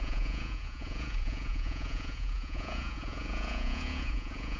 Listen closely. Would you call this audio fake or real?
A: fake